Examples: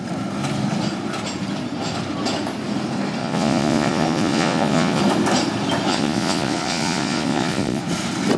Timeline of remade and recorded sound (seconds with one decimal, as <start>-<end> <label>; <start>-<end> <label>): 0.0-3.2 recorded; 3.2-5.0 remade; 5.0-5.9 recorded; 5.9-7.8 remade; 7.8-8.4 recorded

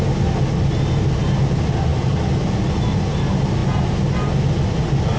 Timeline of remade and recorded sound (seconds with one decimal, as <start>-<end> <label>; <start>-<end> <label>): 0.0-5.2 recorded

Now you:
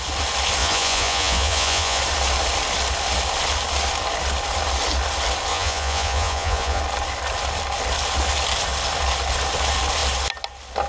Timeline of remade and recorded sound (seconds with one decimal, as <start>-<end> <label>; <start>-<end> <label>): 0.0-0.6 recorded; 0.6-2.0 remade; 2.0-5.5 recorded; 5.5-6.8 remade; 6.8-10.9 recorded

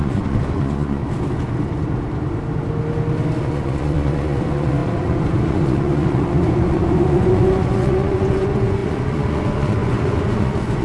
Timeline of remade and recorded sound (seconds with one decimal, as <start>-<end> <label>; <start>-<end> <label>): 0.0-1.0 remade; 1.0-3.4 recorded; 3.4-10.8 remade

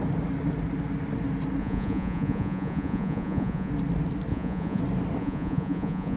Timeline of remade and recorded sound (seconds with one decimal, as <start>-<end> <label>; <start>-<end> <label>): 0.0-1.6 recorded; 1.6-3.7 remade; 3.7-4.3 recorded; 4.3-4.8 remade; 4.8-5.2 recorded; 5.2-6.2 remade